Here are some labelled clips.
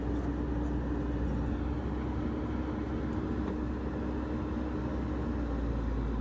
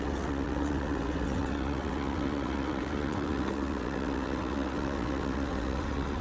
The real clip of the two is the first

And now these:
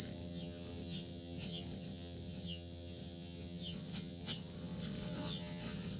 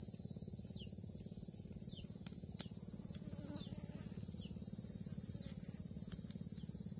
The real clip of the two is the second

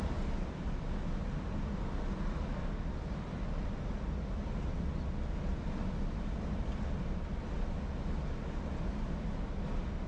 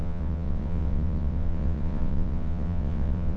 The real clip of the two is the first